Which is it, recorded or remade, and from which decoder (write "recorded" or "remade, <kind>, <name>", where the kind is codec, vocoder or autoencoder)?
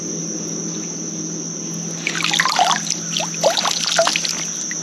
recorded